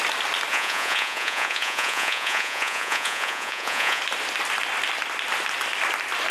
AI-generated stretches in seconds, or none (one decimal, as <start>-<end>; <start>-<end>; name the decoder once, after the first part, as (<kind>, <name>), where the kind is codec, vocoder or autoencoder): 0.5-4.0 (vocoder, Vocos)